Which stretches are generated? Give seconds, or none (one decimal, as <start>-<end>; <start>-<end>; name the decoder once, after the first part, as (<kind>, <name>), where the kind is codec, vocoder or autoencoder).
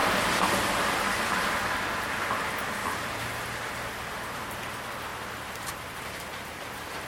5.1-7.1 (vocoder, BigVGAN v2)